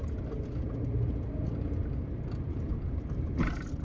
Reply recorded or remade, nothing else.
recorded